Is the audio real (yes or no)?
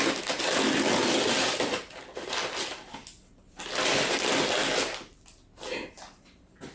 yes